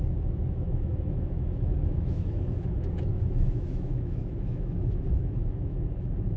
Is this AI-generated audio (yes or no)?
yes